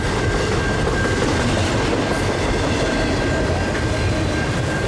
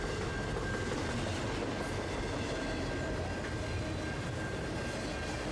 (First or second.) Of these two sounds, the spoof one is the first